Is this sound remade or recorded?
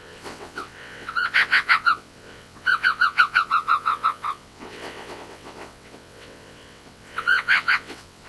remade